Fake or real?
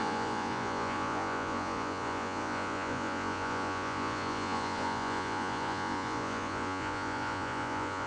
fake